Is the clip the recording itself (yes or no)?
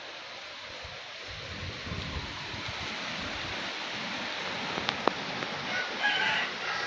yes